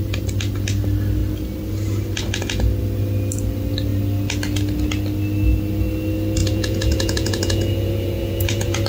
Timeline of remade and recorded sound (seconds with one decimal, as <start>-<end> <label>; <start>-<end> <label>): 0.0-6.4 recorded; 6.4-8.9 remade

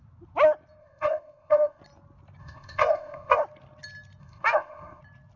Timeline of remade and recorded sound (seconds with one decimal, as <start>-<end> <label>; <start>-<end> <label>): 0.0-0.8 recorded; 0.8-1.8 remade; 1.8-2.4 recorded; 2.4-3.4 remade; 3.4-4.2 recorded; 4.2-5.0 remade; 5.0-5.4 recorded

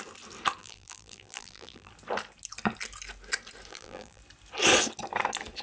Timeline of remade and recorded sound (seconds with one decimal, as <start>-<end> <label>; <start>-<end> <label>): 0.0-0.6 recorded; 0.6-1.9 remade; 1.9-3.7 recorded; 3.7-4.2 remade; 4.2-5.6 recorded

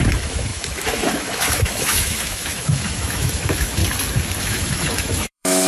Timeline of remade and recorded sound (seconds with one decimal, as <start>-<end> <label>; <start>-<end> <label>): 0.0-3.8 remade; 3.8-4.4 recorded; 4.4-5.7 remade